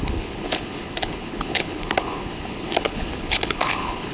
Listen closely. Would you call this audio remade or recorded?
remade